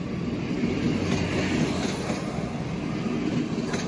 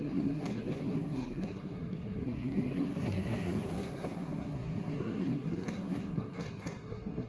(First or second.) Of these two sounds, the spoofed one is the second